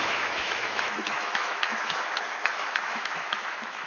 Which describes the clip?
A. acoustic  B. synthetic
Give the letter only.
B